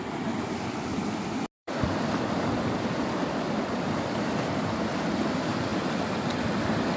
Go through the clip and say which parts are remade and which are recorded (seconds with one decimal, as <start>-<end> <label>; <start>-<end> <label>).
0.0-1.6 recorded; 1.6-2.3 remade; 2.3-7.0 recorded

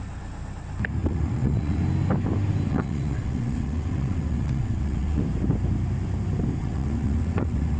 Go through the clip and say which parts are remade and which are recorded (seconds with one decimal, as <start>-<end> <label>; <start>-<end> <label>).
0.0-1.0 recorded; 1.0-1.8 remade; 1.8-2.7 recorded; 2.7-5.2 remade; 5.2-6.6 recorded; 6.6-7.8 remade

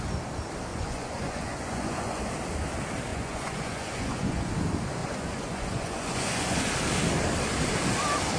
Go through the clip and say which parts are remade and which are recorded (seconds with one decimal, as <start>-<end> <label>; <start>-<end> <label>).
0.0-0.7 recorded; 0.7-2.2 remade; 2.2-3.1 recorded; 3.1-4.5 remade; 4.5-5.0 recorded; 5.0-6.7 remade; 6.7-8.4 recorded